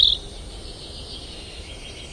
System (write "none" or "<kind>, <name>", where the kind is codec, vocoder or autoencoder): none